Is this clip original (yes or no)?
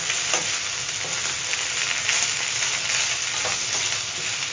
yes